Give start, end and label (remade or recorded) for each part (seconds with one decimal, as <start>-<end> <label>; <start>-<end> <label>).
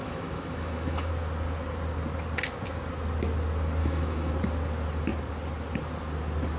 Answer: 0.0-1.1 remade; 1.1-3.8 recorded; 3.8-4.3 remade; 4.3-6.6 recorded